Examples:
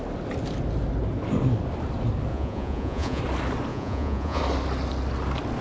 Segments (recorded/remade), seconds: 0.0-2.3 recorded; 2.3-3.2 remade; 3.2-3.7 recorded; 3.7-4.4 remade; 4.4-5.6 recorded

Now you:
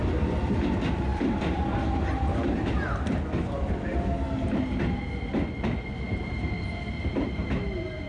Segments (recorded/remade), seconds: 0.0-1.1 recorded; 1.1-1.6 remade; 1.6-2.3 recorded; 2.3-3.7 remade; 3.7-8.1 recorded

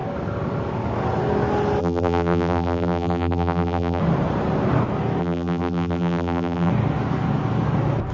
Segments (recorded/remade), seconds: 0.0-1.8 recorded; 1.8-4.0 remade; 4.0-5.2 recorded; 5.2-6.7 remade; 6.7-8.1 recorded

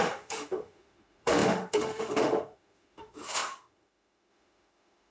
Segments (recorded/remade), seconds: 0.0-5.1 remade

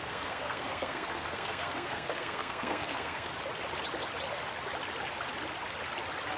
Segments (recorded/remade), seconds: 0.0-3.3 remade; 3.3-6.4 recorded

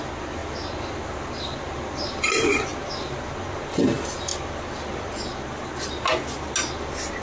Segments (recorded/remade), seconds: 0.0-7.2 recorded